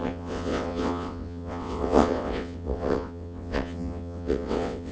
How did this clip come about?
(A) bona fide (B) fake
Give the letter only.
B